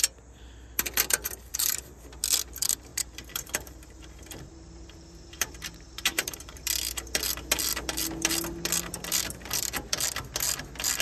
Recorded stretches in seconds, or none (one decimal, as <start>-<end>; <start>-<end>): 0.0-1.5; 2.2-2.9; 6.6-11.0